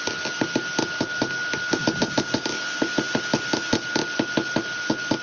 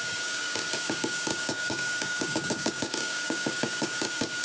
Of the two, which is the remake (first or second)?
second